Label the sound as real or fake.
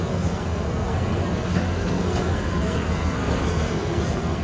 fake